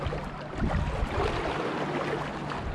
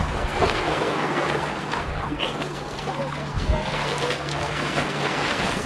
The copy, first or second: second